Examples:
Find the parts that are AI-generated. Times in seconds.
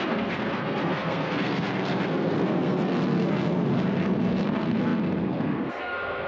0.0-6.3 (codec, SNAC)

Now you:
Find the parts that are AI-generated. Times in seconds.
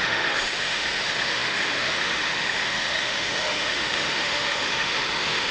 0.0-5.5 (autoencoder, DAC-VAE)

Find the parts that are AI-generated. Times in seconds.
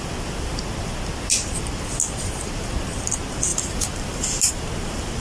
3.5-4.5 (vocoder, BigVGAN v2)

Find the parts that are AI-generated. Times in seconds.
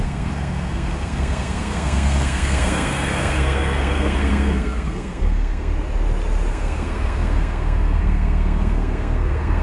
0.0-5.7 (codec, SNAC); 6.5-9.6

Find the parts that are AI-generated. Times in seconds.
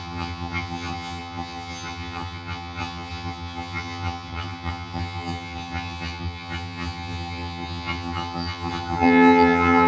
0.0-9.9 (vocoder, HiFi-GAN)